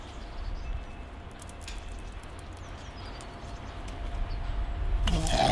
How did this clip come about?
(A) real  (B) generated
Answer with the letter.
A